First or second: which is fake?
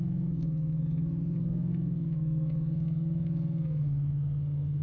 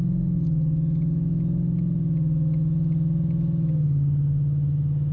first